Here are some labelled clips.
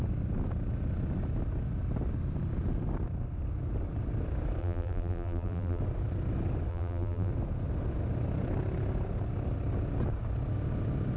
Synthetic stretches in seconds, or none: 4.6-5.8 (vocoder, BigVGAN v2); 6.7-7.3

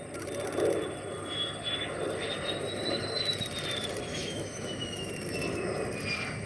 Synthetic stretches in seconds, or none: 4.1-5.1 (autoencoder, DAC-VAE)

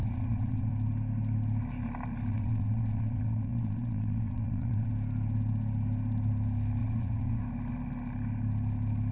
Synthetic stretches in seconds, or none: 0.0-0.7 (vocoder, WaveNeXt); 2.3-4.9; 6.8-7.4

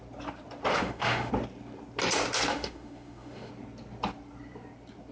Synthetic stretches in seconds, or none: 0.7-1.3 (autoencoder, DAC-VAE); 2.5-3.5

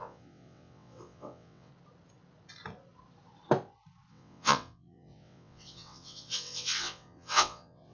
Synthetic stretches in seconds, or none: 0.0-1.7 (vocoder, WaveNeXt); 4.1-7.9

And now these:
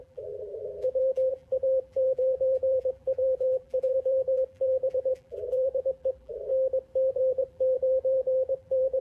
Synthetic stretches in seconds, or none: 0.0-6.5 (vocoder, BigVGAN v2); 7.1-9.0

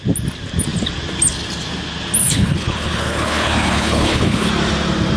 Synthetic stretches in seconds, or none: 2.2-4.5 (codec, HILCodec)